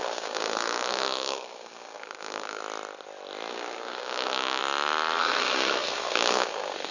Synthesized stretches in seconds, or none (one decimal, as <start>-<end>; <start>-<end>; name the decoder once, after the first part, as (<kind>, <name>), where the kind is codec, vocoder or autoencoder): 0.0-2.6 (codec, SNAC); 3.5-4.6; 5.2-6.9